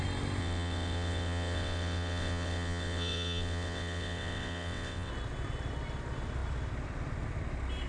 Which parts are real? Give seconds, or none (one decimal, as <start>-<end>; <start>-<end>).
0.0-0.4; 5.1-7.9